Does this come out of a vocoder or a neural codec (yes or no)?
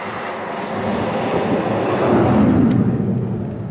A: no